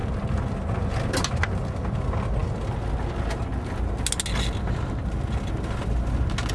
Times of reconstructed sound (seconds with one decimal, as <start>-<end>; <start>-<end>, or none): none